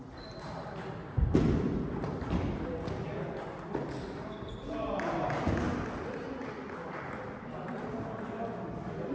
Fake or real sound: real